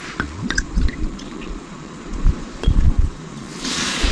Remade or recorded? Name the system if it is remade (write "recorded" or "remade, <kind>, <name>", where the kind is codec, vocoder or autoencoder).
remade, vocoder, Vocos